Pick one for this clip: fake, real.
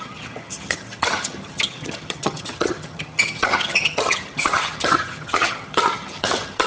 fake